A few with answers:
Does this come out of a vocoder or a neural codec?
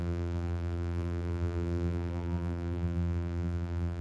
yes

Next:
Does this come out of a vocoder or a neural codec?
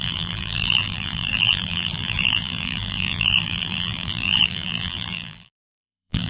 yes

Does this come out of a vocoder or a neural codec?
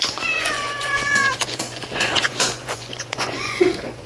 yes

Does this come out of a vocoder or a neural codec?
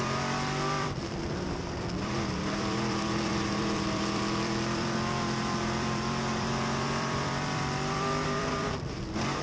yes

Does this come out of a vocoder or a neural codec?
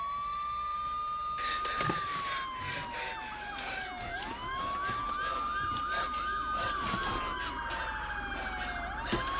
no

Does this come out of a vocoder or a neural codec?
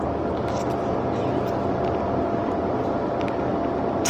no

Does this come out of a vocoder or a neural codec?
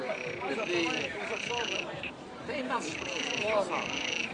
yes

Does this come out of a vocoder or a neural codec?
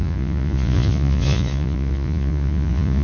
yes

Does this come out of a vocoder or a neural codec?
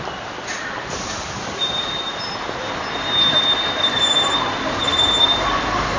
yes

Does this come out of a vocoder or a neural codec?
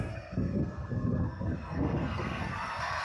yes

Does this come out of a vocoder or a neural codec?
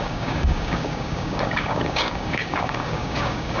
yes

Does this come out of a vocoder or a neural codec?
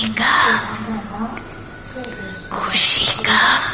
no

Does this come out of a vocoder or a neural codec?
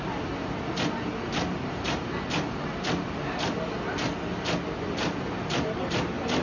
no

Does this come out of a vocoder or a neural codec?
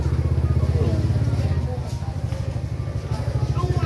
no